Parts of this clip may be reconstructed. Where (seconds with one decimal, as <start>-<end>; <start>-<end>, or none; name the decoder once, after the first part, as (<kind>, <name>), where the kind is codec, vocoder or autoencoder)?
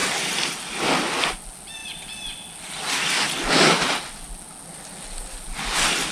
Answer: 0.0-0.5 (vocoder, BigVGAN v2)